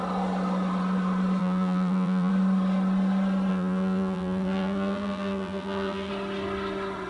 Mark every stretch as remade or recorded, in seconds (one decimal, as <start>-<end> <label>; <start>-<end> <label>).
0.0-1.4 recorded; 1.4-2.3 remade; 2.3-3.5 recorded; 3.5-6.1 remade; 6.1-7.1 recorded